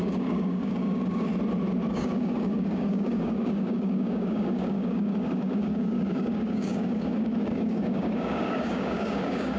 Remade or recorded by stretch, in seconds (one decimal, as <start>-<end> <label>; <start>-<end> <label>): 0.0-1.3 remade; 1.3-1.9 recorded; 1.9-9.6 remade